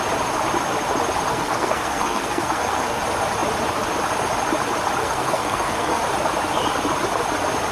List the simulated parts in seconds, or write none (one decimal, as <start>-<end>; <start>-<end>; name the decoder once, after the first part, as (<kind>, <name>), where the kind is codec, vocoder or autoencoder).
1.3-3.0 (codec, SNAC); 5.0-6.0